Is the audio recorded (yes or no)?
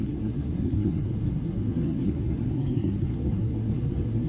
no